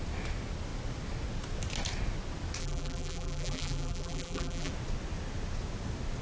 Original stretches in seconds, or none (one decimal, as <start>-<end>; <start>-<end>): 0.0-2.6; 4.7-6.2